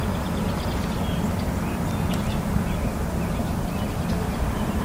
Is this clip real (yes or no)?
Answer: yes